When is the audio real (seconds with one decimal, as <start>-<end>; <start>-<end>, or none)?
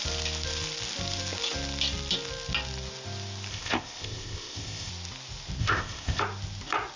0.0-3.5; 4.9-5.6; 6.2-7.0